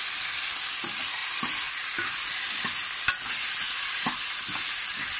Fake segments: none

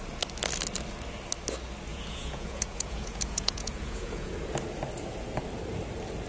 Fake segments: 1.9-4.3 (vocoder, Vocos)

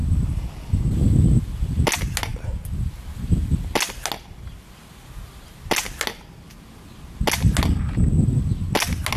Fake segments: 0.0-1.1 (vocoder, BigVGAN v2)

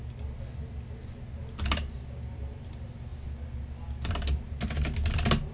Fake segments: none

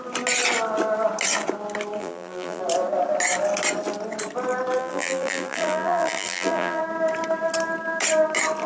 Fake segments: 2.0-2.6 (vocoder, BigVGAN v2); 4.8-6.8

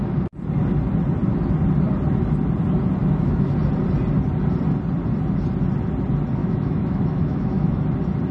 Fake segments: 3.0-3.5 (autoencoder, DAC-VAE); 6.4-7.8

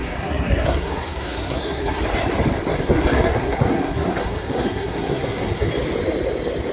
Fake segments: 0.0-2.0 (codec, SNAC); 2.7-5.7

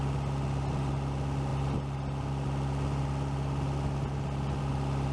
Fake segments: none